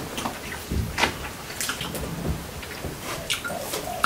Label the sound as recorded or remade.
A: recorded